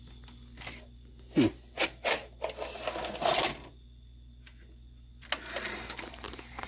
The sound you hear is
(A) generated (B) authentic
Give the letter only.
B